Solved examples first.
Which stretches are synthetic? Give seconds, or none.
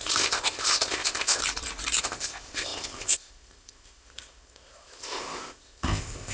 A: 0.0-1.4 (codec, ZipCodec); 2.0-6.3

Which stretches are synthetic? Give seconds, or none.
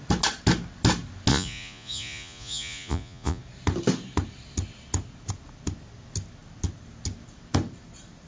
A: 1.3-3.4 (vocoder, Vocos)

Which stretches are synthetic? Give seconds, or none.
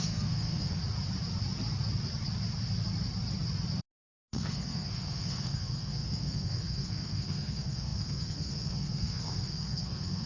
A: 0.0-0.8 (codec, SNAC); 3.8-10.3